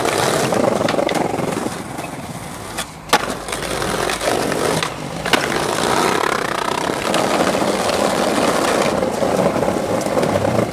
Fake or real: real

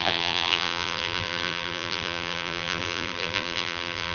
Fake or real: fake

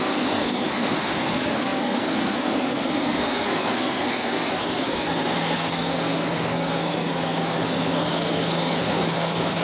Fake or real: fake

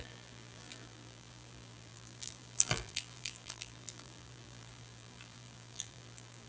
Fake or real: fake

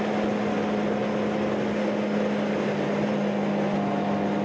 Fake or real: real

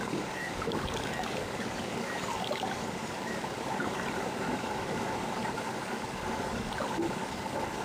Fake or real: fake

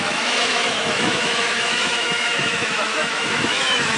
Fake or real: fake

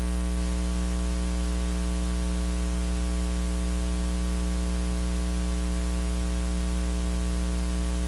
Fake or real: real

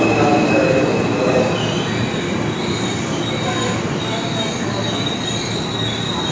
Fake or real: real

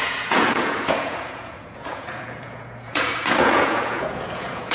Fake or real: fake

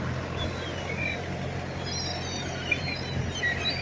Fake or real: real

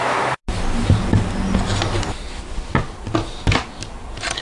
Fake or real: real